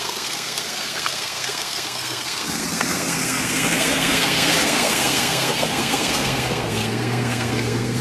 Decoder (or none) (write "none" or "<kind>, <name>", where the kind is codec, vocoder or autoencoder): codec, SNAC